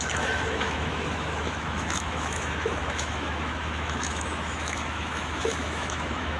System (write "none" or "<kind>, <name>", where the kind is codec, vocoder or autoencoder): autoencoder, DAC-VAE